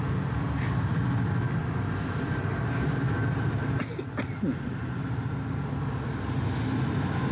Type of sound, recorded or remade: recorded